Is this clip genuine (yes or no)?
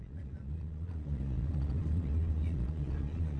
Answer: no